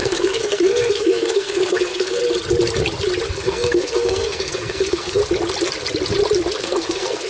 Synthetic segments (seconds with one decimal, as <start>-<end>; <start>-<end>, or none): 0.0-2.2; 3.3-5.2; 6.6-7.3